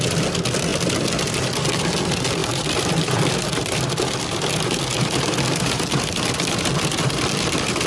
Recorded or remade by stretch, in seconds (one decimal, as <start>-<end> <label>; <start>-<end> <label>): 0.0-2.4 recorded; 2.4-6.5 remade; 6.5-7.9 recorded